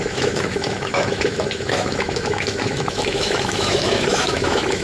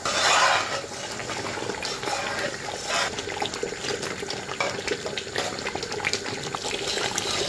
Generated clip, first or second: first